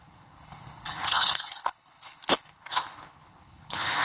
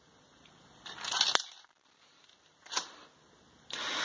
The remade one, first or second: first